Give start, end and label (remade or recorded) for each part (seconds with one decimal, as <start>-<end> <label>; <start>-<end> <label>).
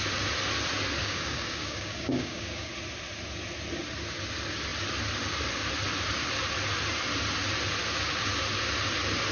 0.0-1.0 recorded; 1.0-2.7 remade; 2.7-9.3 recorded